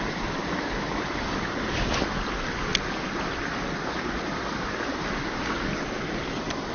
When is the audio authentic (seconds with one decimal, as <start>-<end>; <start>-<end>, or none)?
0.0-6.7